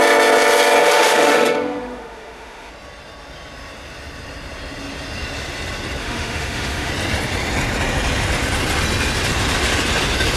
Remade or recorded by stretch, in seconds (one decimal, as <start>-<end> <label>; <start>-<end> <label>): 0.0-0.8 recorded; 0.8-2.7 remade; 2.7-6.0 recorded; 6.0-6.9 remade; 6.9-10.4 recorded